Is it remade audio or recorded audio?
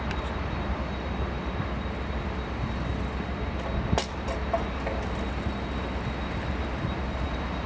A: recorded